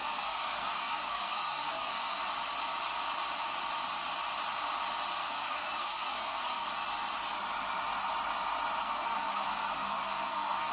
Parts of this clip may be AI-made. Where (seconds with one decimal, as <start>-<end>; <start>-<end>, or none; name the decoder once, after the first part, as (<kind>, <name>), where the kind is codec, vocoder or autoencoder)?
0.0-2.2 (codec, SNAC); 5.2-6.7; 8.8-10.7

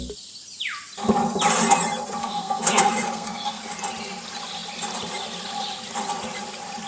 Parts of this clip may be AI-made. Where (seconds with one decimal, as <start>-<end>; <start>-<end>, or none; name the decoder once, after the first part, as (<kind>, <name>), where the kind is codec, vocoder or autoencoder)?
2.2-3.6 (codec, SNAC)